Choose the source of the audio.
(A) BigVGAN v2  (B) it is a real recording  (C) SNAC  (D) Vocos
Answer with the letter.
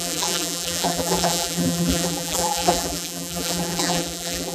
A